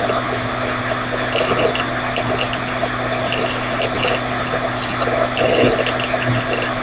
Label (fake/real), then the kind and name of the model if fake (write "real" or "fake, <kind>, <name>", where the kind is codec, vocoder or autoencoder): real